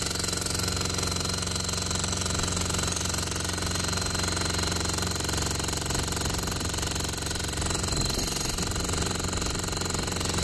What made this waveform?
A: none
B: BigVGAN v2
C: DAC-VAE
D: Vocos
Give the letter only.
A